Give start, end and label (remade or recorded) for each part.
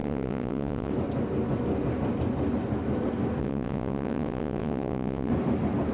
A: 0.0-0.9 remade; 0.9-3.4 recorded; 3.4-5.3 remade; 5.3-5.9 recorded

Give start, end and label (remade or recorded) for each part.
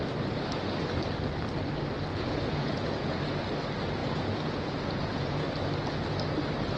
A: 0.0-2.1 recorded; 2.1-3.2 remade; 3.2-4.0 recorded; 4.0-5.5 remade; 5.5-6.8 recorded